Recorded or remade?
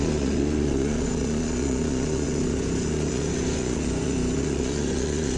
remade